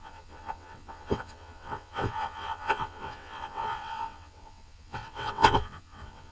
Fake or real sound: fake